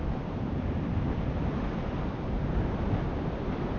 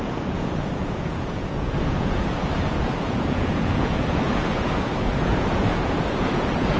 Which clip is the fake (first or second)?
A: second